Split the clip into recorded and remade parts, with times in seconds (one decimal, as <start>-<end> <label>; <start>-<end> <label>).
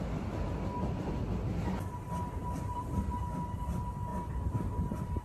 0.0-2.4 recorded; 2.4-3.1 remade; 3.1-4.1 recorded; 4.1-5.2 remade